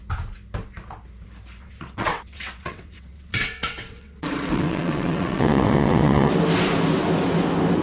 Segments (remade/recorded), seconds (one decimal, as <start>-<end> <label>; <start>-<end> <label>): 0.0-1.6 recorded; 1.6-6.3 remade; 6.3-7.8 recorded